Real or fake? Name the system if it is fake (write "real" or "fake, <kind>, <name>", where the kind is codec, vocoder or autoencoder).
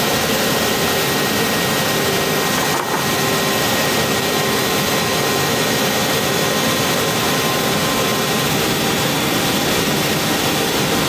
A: real